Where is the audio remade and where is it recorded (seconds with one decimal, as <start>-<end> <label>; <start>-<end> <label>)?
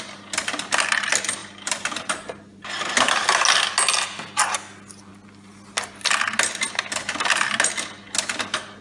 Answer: 0.0-1.4 recorded; 1.4-2.4 remade; 2.4-8.8 recorded